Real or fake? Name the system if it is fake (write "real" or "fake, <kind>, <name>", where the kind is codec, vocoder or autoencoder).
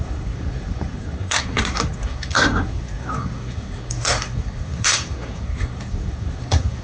fake, codec, SNAC